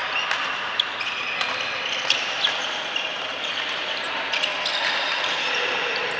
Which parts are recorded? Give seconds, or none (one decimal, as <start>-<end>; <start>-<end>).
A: 1.2-3.1; 4.3-6.2

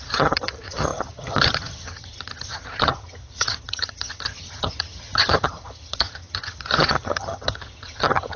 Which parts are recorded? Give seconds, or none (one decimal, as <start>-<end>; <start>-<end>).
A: none

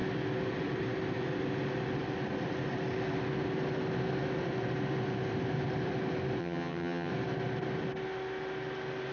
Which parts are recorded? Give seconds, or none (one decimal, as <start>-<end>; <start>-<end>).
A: 0.0-6.4; 7.1-9.1

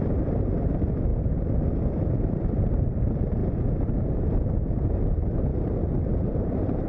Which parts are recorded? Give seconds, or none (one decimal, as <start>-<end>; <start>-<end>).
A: 1.1-2.2; 3.4-4.0

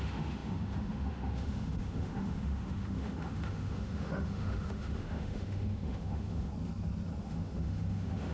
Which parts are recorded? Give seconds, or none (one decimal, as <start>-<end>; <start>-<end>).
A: 6.5-7.2

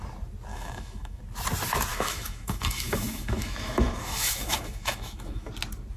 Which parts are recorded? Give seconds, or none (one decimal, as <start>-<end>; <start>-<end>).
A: 0.0-0.5; 1.2-1.9; 5.5-6.0

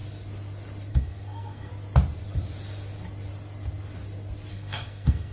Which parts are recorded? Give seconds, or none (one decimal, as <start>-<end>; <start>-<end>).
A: 0.0-0.9; 1.7-4.5